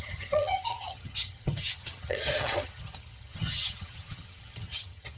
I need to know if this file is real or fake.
fake